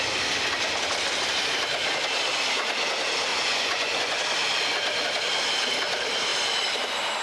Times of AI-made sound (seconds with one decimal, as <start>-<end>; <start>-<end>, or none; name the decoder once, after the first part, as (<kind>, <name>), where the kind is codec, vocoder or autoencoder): 3.3-4.2 (vocoder, Vocos)